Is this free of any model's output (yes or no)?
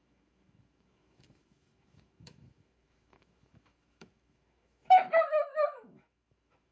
no